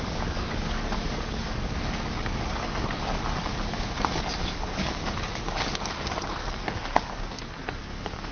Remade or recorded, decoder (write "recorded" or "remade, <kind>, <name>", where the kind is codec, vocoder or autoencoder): remade, codec, DAC